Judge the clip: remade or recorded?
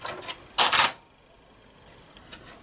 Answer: recorded